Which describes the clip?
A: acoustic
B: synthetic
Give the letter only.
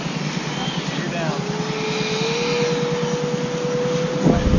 A